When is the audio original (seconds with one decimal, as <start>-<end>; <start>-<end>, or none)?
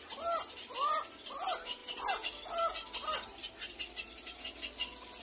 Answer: 0.0-5.2